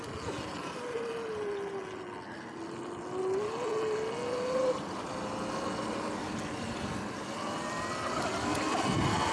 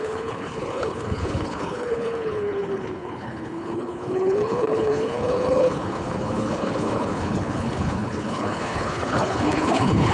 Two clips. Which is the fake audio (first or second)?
second